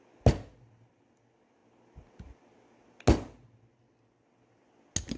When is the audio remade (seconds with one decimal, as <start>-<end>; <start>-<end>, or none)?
none